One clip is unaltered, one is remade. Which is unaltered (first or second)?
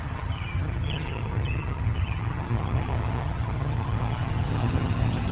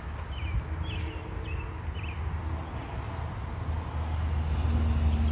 second